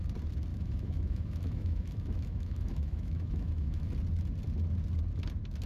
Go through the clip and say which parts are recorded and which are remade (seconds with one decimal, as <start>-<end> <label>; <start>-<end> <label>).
0.0-0.5 recorded; 0.5-3.9 remade; 3.9-5.7 recorded